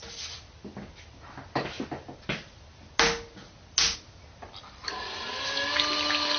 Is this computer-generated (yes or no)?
no